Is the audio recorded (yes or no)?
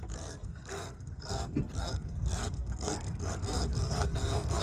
no